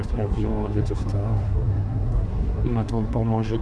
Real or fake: fake